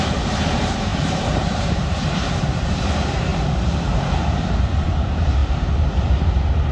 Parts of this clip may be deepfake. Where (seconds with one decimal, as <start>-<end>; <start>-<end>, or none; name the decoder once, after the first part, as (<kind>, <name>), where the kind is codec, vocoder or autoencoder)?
0.0-6.7 (vocoder, BigVGAN v2)